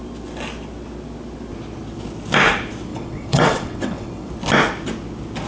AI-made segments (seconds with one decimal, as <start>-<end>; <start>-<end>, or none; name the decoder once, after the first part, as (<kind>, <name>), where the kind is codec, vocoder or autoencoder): 2.9-4.3 (vocoder, WaveNeXt)